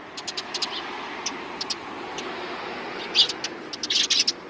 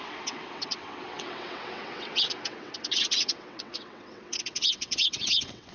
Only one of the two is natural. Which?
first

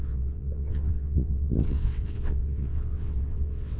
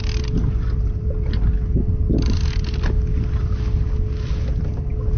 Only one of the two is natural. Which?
second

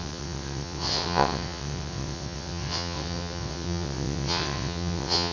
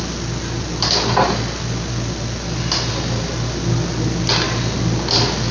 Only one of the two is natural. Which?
second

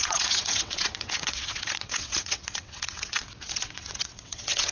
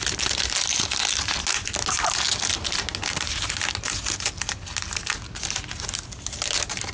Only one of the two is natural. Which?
second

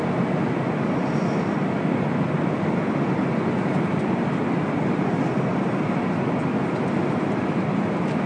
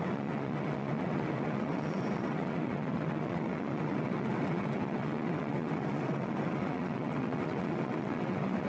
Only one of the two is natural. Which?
first